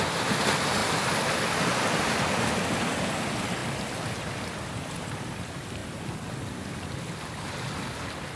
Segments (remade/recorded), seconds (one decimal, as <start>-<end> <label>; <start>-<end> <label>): 0.0-5.8 remade; 5.8-6.6 recorded; 6.6-8.4 remade